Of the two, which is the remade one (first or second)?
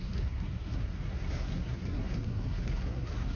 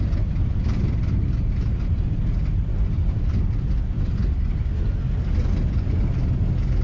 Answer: first